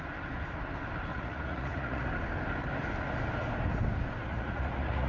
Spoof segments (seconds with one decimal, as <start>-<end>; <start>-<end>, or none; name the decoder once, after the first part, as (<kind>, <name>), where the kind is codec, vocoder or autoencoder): 1.1-2.1 (vocoder, Vocos); 4.2-5.1